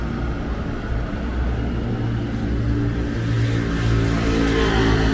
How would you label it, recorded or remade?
recorded